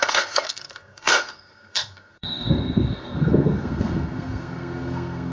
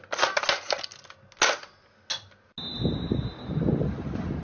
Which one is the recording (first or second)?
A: second